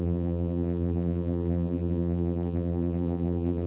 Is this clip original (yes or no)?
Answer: no